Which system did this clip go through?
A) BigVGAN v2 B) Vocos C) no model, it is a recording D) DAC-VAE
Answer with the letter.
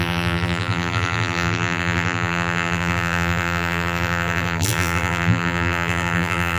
A